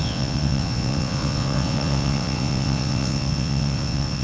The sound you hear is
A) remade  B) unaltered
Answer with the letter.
A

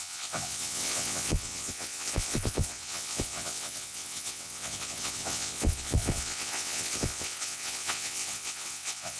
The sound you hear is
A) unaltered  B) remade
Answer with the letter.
B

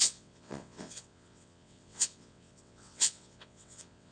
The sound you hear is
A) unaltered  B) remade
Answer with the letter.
B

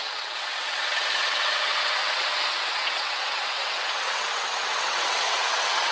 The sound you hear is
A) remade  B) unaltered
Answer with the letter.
A